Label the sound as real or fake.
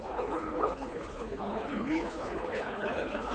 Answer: fake